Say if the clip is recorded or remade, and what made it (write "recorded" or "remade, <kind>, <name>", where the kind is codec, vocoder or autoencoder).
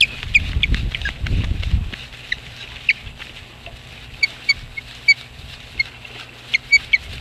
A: recorded